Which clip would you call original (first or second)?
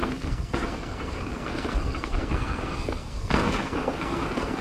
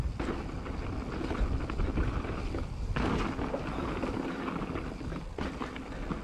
second